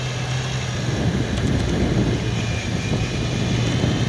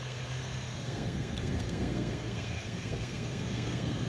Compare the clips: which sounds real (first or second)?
first